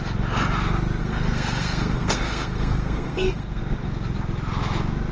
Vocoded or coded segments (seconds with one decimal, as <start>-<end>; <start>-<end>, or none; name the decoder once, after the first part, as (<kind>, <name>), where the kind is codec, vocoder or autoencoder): 1.0-3.6 (codec, SNAC)